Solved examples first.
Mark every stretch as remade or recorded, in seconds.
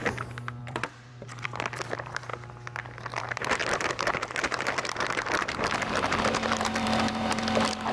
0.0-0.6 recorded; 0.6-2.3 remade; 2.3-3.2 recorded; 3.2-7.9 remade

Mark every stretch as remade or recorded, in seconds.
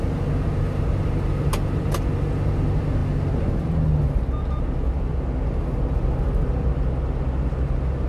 0.0-8.1 recorded